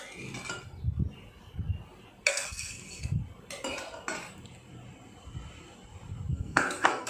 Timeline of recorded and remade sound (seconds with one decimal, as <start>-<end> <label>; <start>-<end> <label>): 0.0-2.3 recorded; 2.3-3.2 remade; 3.2-6.3 recorded; 6.3-7.1 remade